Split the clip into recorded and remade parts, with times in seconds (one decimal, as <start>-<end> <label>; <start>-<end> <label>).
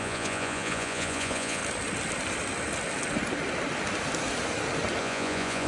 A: 0.0-1.6 remade; 1.6-5.0 recorded; 5.0-5.7 remade